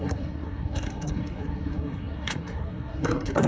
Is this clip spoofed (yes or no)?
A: yes